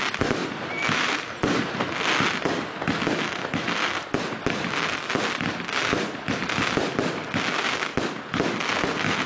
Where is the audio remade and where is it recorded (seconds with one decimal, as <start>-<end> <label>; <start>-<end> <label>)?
0.0-9.3 recorded